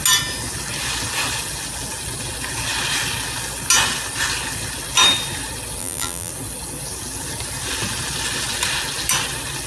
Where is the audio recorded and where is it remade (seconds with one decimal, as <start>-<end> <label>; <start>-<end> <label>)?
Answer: 0.0-5.8 recorded; 5.8-6.3 remade; 6.3-9.7 recorded